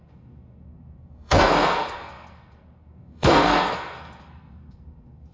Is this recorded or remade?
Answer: remade